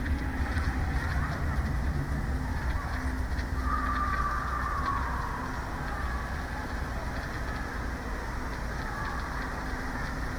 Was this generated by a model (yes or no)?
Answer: no